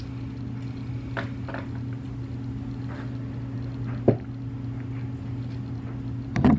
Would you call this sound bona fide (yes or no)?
yes